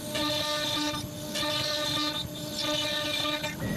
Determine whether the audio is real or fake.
real